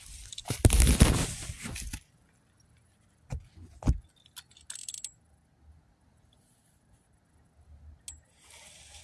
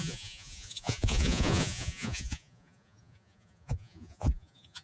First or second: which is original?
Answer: first